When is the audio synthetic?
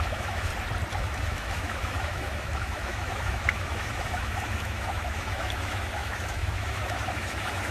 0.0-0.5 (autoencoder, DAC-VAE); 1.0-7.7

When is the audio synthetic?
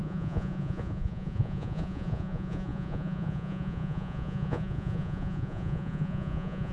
0.0-6.7 (vocoder, Vocos)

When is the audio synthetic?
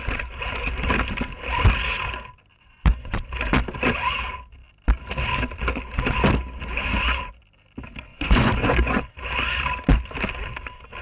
2.5-3.2 (vocoder, Vocos); 8.1-9.0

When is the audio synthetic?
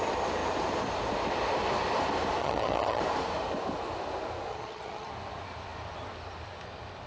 2.4-3.0 (vocoder, HiFi-GAN); 4.5-5.1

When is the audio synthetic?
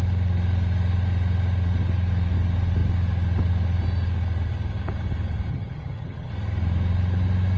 5.5-6.3 (vocoder, HiFi-GAN)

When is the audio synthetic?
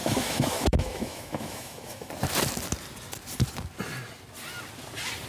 0.0-2.1 (autoencoder, DAC-VAE)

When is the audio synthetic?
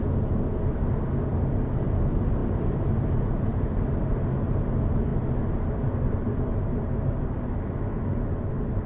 none